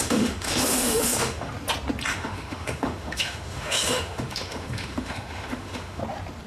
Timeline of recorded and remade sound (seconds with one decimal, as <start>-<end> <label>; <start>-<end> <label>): 0.0-1.5 remade; 1.5-2.1 recorded; 2.1-6.0 remade; 6.0-6.5 recorded